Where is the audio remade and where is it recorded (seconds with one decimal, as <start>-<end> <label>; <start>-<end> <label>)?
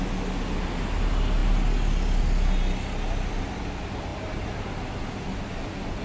0.0-6.0 recorded